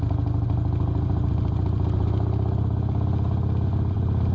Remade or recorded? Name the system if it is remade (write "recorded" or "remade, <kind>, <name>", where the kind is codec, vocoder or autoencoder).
recorded